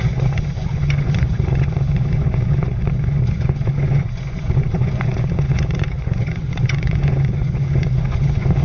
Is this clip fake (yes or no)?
yes